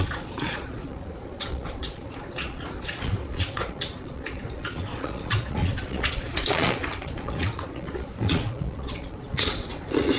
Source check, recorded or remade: remade